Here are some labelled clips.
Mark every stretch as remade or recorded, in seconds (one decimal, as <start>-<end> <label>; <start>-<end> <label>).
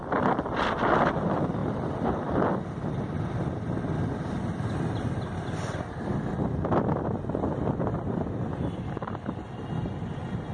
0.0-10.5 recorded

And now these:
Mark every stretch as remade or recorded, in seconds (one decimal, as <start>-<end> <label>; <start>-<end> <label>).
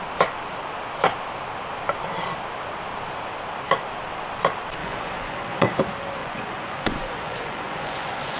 0.0-4.8 recorded; 4.8-5.8 remade; 5.8-6.2 recorded; 6.2-8.4 remade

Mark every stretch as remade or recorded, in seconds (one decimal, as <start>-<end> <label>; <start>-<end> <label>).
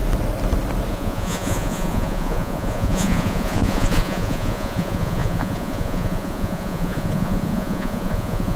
0.0-0.9 recorded; 0.9-8.6 remade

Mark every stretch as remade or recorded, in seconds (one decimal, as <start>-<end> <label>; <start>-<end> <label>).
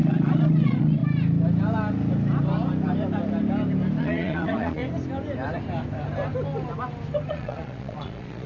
0.0-1.0 remade; 1.0-4.0 recorded; 4.0-4.8 remade; 4.8-7.3 recorded; 7.3-8.5 remade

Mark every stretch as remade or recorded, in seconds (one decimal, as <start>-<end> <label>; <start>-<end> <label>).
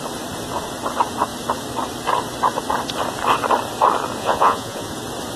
0.0-4.2 recorded; 4.2-4.9 remade; 4.9-5.4 recorded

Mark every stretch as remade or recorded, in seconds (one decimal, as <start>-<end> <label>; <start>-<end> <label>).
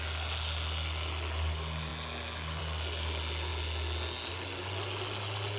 0.0-5.6 recorded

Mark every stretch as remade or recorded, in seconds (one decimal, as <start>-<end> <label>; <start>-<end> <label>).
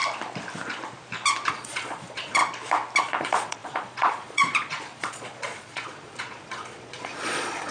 0.0-1.5 recorded; 1.5-2.4 remade; 2.4-3.2 recorded; 3.2-7.7 remade